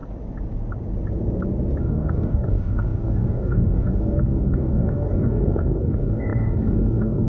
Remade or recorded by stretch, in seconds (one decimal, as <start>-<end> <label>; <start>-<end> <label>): 0.0-1.8 recorded; 1.8-7.3 remade